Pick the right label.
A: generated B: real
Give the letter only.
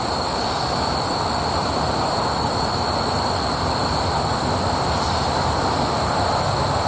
B